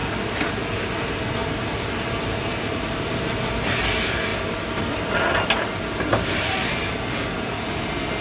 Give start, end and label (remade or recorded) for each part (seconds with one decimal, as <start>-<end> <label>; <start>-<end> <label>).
0.0-0.5 remade; 0.5-1.4 recorded; 1.4-3.4 remade; 3.4-4.3 recorded; 4.3-6.7 remade; 6.7-8.2 recorded